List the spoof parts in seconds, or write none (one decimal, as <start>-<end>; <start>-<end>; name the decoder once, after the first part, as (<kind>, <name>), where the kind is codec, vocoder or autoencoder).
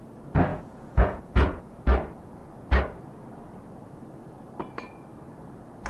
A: 0.5-1.8 (vocoder, Vocos)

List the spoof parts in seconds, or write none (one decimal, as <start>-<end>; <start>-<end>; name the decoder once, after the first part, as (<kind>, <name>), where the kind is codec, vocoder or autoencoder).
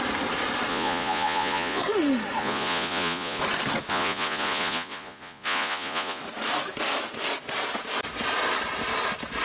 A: 0.7-1.8 (vocoder, Vocos); 2.4-3.4; 3.9-6.2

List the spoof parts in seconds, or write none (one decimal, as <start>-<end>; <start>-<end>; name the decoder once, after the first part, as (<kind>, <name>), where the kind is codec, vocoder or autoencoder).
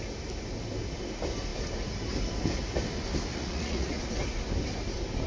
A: 3.3-4.0 (vocoder, Vocos)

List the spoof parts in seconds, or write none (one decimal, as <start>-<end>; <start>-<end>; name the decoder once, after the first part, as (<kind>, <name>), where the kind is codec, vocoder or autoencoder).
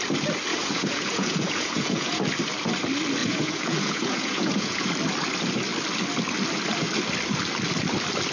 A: 0.5-2.2 (vocoder, Vocos); 3.2-4.9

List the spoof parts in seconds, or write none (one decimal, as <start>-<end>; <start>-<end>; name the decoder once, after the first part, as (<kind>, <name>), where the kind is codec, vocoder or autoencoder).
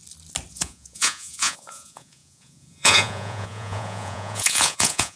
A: 0.5-5.2 (vocoder, Vocos)